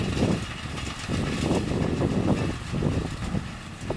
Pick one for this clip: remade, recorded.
recorded